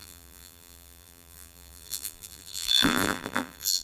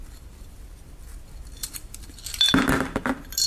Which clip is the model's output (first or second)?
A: first